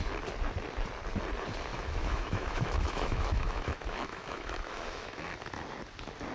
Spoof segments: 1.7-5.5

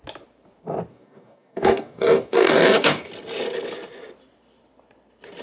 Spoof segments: 0.9-3.1